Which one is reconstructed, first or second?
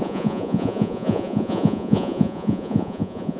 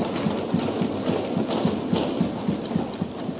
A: first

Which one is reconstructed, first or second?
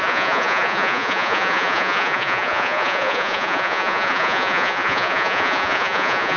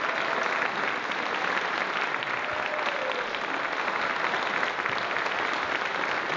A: first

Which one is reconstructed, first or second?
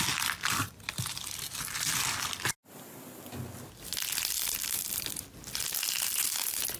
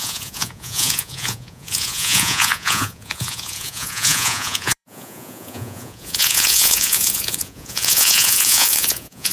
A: second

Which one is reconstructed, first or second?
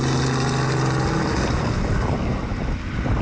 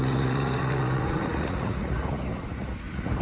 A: second